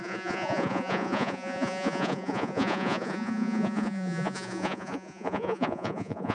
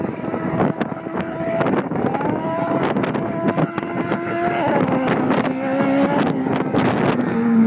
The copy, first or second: first